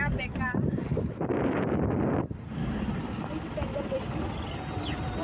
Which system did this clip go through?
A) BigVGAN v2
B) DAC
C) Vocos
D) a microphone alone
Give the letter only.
D